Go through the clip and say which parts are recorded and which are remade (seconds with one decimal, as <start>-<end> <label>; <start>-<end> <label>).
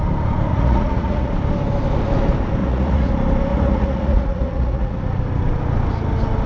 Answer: 0.0-0.5 recorded; 0.5-1.3 remade; 1.3-2.6 recorded; 2.6-3.1 remade; 3.1-3.5 recorded; 3.5-5.0 remade; 5.0-6.5 recorded